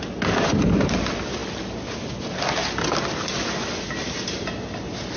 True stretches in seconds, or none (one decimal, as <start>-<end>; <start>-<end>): 0.0-5.2